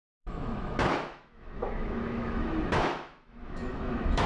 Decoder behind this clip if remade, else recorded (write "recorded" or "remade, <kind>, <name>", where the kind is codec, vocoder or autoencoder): remade, autoencoder, DAC-VAE